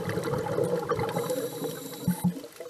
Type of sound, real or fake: real